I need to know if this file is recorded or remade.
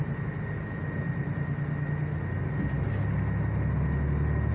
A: recorded